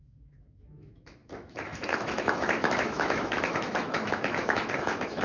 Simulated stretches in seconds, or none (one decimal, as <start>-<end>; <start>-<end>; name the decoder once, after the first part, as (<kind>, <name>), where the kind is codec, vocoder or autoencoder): 0.0-5.2 (autoencoder, DAC-VAE)